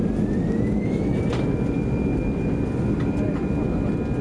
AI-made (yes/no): no